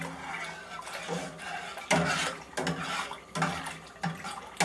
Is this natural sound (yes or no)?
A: yes